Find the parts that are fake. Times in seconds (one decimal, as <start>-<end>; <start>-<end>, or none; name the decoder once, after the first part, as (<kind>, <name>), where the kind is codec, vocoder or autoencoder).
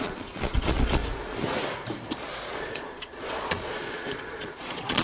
0.0-1.0 (vocoder, Vocos); 2.4-5.0